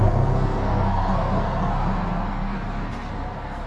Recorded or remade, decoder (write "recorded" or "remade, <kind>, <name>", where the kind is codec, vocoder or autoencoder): remade, codec, SNAC